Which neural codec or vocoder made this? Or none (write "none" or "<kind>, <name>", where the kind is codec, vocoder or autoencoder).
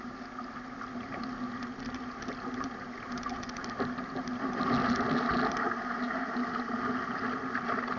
none